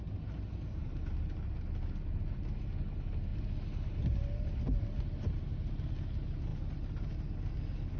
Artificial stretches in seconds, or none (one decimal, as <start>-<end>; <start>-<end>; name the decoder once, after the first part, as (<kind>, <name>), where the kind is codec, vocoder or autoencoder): none